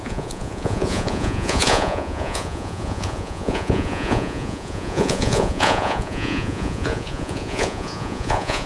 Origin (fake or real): fake